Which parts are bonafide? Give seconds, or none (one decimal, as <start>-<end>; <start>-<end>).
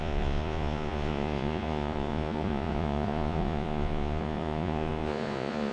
none